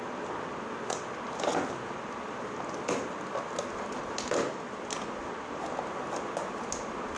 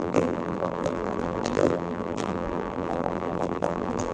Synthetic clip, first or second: second